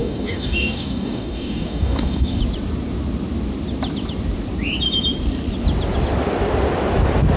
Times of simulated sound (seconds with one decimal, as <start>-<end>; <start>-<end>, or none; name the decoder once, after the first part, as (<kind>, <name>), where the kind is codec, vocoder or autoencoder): 0.0-2.4 (codec, DAC)